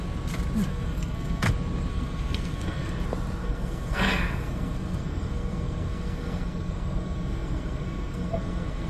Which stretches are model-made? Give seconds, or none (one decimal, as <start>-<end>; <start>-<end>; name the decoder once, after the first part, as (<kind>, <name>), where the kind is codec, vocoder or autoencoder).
0.7-1.5 (codec, SNAC); 1.9-2.9; 3.4-8.9